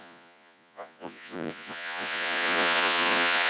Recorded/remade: remade